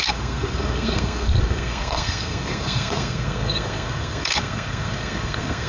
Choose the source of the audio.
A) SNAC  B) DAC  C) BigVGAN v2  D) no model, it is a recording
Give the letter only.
A